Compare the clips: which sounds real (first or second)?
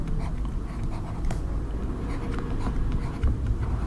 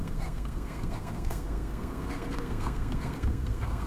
first